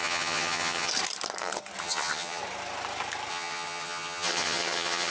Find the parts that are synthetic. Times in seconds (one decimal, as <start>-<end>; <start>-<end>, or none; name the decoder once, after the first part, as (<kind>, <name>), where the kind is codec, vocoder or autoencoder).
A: 0.0-0.9 (vocoder, HiFi-GAN); 1.8-2.4; 3.3-5.1